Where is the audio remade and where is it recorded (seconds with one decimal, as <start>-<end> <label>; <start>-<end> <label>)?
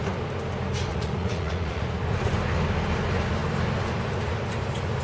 0.0-0.9 recorded; 0.9-1.8 remade; 1.8-5.0 recorded